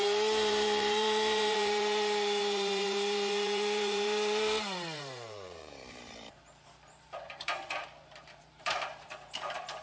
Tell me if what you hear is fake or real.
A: fake